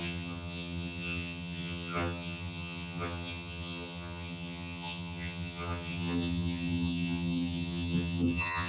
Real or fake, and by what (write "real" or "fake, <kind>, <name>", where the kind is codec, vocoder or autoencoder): fake, vocoder, HiFi-GAN